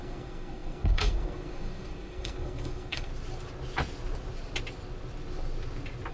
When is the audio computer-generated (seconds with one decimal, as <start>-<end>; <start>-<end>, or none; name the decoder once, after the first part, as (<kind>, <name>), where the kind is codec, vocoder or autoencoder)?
0.0-3.1 (codec, SNAC)